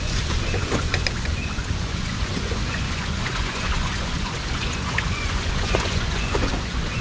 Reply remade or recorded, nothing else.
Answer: remade